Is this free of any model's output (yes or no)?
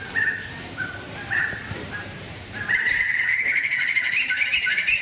no